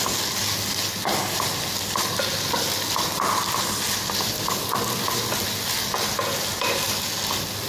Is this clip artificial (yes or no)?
no